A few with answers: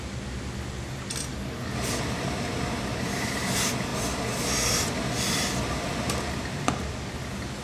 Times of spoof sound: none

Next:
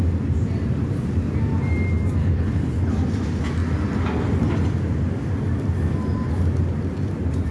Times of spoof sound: 2.2-2.9 (codec, HILCodec)

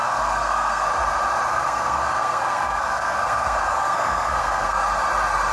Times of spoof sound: 0.0-0.9 (codec, SNAC); 1.5-4.8

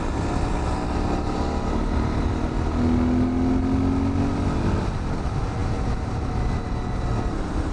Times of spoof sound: none

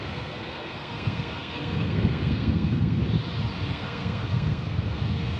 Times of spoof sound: 0.0-3.0 (codec, SNAC); 3.7-5.4

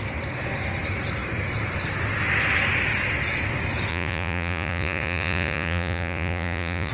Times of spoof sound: 3.9-6.9 (vocoder, Vocos)

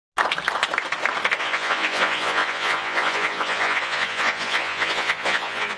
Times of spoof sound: 1.4-5.8 (vocoder, Vocos)

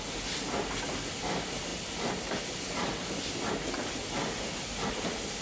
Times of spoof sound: none